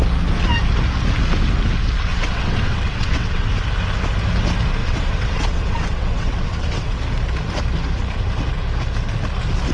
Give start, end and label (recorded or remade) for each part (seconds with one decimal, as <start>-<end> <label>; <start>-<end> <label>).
0.0-2.1 recorded; 2.1-3.5 remade; 3.5-4.8 recorded; 4.8-7.0 remade; 7.0-9.7 recorded